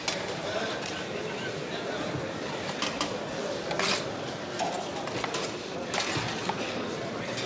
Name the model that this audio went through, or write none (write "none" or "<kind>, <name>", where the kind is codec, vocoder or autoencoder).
none